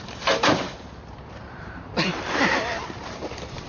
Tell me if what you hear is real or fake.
fake